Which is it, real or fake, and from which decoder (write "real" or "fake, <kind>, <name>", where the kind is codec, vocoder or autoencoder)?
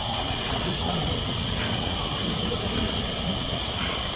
fake, vocoder, WaveNeXt